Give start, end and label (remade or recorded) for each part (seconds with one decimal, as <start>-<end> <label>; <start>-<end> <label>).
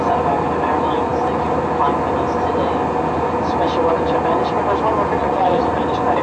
0.0-5.2 recorded; 5.2-5.8 remade; 5.8-6.2 recorded